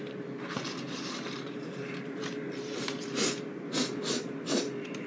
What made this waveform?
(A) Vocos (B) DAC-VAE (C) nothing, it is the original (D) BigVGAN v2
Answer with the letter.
D